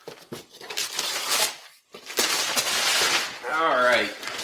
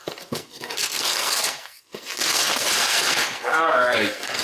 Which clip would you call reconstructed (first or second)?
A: second